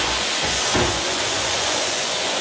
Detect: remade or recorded remade